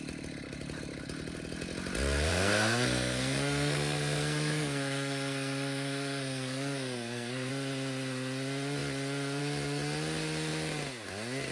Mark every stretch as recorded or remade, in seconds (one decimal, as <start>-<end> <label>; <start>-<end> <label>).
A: 0.0-2.3 recorded; 2.3-7.5 remade; 7.5-11.5 recorded

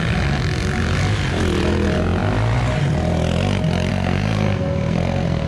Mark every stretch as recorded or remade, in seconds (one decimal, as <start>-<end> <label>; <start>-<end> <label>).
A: 0.0-3.9 recorded; 3.9-5.5 remade

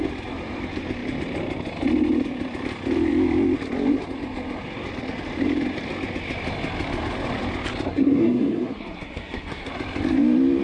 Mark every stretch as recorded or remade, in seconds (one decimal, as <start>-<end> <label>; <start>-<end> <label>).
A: 0.0-7.9 recorded; 7.9-9.7 remade; 9.7-10.6 recorded

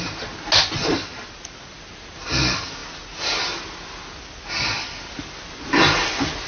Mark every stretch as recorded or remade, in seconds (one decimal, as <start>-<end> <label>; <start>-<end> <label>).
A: 0.0-6.5 recorded

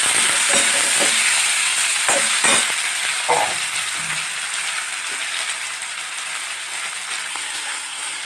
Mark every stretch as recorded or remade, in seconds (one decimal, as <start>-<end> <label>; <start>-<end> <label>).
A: 0.0-7.3 recorded; 7.3-8.2 remade

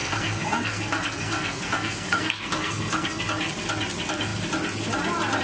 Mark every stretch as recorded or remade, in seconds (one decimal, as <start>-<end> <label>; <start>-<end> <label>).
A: 0.0-3.2 remade; 3.2-5.4 recorded

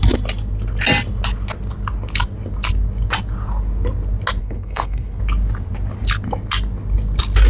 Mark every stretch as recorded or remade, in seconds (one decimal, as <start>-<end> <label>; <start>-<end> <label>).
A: 0.0-4.4 recorded; 4.4-5.2 remade; 5.2-7.5 recorded

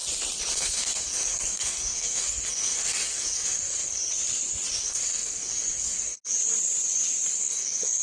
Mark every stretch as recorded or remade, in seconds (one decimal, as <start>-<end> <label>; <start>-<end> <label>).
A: 0.0-0.5 recorded; 0.5-4.0 remade; 4.0-4.8 recorded; 4.8-6.3 remade; 6.3-7.3 recorded; 7.3-8.0 remade